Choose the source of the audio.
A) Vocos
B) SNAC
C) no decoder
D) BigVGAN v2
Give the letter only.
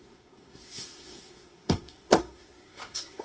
B